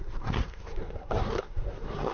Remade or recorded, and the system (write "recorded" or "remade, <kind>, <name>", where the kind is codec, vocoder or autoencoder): remade, codec, SNAC